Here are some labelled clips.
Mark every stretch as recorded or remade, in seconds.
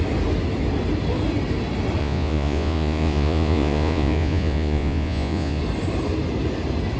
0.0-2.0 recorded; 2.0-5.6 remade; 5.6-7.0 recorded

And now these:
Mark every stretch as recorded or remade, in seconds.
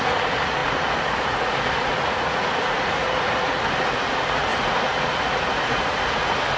0.0-6.6 remade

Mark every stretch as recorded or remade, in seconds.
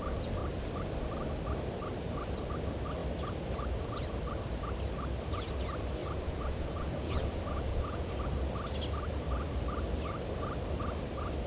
0.0-6.0 recorded; 6.0-8.1 remade; 8.1-11.5 recorded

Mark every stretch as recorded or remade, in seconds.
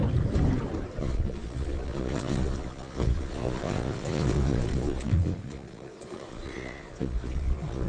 0.0-1.0 recorded; 1.0-7.9 remade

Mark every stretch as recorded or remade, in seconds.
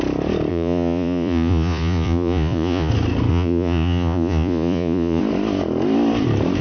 0.0-0.5 recorded; 0.5-2.9 remade; 2.9-3.3 recorded; 3.3-5.2 remade; 5.2-6.6 recorded